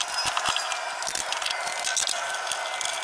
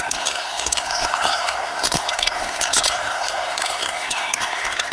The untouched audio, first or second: first